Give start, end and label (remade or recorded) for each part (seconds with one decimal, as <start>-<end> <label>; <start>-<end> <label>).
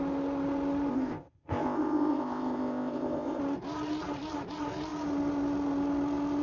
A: 0.0-0.9 recorded; 0.9-3.4 remade; 3.4-6.4 recorded